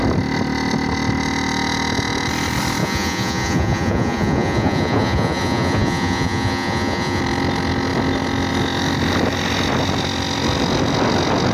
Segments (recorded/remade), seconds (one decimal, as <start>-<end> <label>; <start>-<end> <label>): 0.0-2.8 recorded; 2.8-7.2 remade; 7.2-11.5 recorded